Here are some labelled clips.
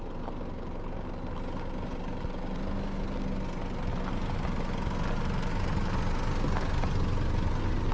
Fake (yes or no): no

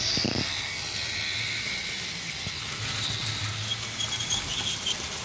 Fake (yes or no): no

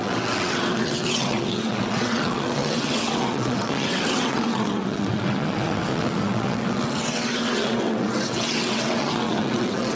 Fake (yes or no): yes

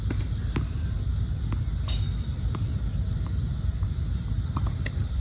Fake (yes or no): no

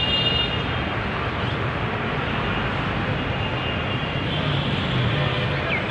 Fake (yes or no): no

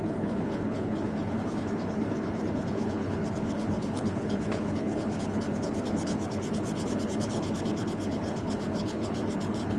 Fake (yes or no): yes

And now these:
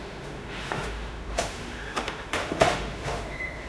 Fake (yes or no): yes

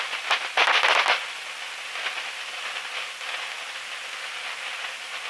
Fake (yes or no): no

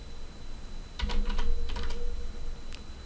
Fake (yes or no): no